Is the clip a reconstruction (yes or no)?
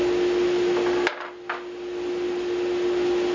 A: no